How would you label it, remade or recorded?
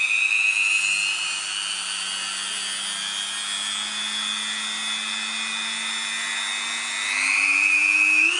recorded